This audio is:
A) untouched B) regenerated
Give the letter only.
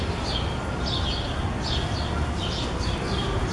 A